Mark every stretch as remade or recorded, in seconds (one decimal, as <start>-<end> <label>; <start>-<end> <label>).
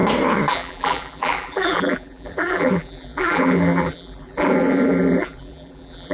0.0-0.5 recorded; 0.5-6.1 remade